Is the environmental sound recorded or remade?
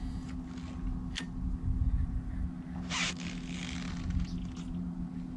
recorded